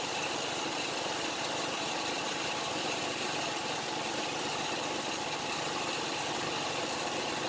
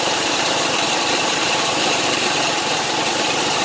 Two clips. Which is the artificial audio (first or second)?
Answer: second